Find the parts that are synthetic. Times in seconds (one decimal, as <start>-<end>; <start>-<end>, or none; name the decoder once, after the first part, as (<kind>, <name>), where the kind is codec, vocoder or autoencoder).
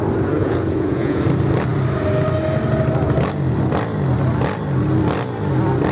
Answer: 0.4-1.2 (vocoder, Vocos)